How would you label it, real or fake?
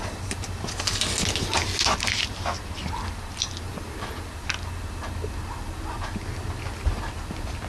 real